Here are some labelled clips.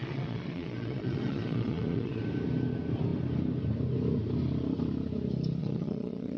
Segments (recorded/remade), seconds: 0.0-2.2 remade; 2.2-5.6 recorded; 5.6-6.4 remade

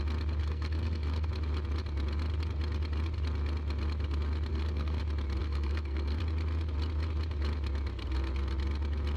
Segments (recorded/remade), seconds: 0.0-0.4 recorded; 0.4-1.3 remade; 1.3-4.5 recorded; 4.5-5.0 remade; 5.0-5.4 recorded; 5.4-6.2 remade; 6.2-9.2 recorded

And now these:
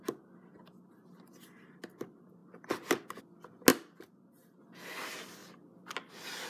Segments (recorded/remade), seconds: 0.0-3.7 recorded; 3.7-4.6 remade; 4.6-6.5 recorded

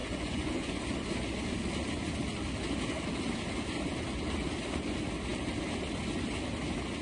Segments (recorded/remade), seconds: 0.0-0.8 remade; 0.8-7.0 recorded

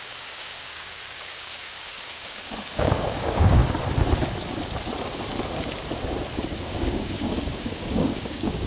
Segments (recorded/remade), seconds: 0.0-3.6 remade; 3.6-6.7 recorded; 6.7-8.7 remade

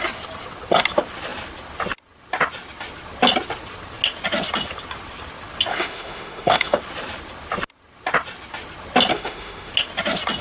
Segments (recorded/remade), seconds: 0.0-5.7 recorded; 5.7-6.8 remade; 6.8-9.1 recorded; 9.1-9.7 remade; 9.7-10.4 recorded